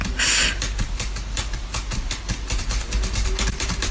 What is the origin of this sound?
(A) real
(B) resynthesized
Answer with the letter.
A